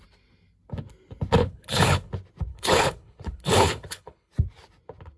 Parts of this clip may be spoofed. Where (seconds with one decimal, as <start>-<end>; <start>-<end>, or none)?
1.4-2.1; 2.5-4.3